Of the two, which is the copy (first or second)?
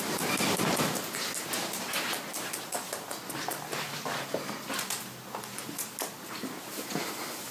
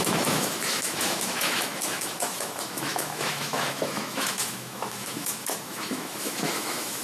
second